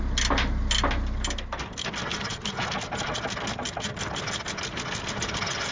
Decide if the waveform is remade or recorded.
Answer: recorded